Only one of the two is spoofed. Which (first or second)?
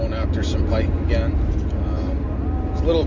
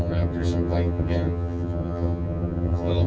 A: second